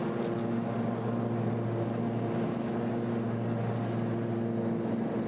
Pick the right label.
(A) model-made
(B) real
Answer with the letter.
B